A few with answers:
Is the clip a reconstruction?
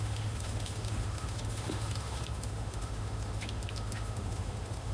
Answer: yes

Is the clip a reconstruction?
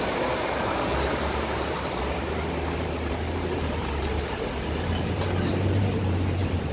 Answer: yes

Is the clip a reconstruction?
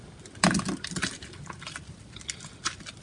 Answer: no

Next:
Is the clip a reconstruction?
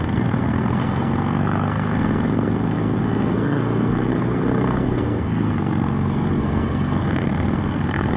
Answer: yes